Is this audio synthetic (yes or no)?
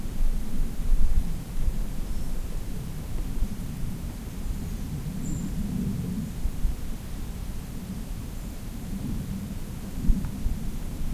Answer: yes